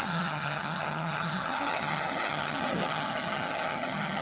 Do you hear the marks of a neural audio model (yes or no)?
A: yes